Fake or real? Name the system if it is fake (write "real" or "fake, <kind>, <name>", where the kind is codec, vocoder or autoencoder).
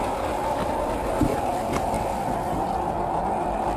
real